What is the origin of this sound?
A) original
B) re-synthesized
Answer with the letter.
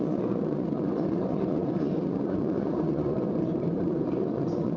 B